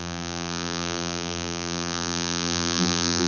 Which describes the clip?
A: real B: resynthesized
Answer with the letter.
B